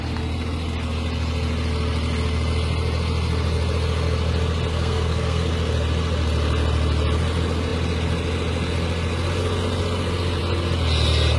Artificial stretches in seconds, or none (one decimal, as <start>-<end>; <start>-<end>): 4.7-5.5